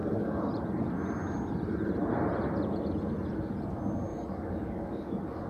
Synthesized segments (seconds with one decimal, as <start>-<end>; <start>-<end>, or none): 0.0-0.5; 4.1-5.5